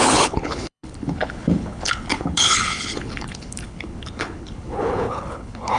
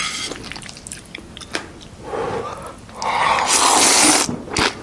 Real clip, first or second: second